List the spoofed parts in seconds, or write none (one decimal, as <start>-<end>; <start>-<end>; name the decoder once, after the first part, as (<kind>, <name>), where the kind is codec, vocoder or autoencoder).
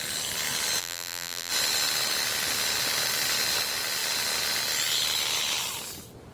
0.8-1.5 (vocoder, BigVGAN v2)